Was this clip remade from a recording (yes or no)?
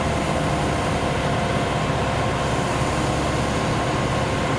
no